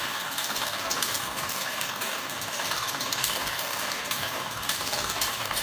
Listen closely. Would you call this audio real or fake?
fake